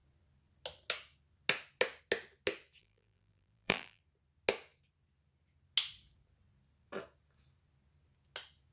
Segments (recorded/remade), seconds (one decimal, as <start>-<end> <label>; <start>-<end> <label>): 0.0-2.8 recorded; 2.8-4.0 remade; 4.0-8.7 recorded